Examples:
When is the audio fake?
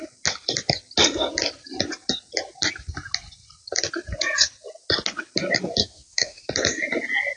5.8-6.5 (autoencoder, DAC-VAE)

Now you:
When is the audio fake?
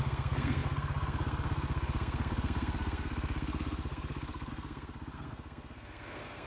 0.0-6.5 (codec, SNAC)